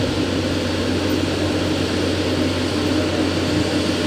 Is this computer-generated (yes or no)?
no